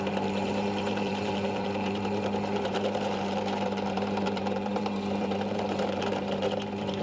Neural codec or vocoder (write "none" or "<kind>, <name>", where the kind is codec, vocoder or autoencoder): vocoder, BigVGAN v2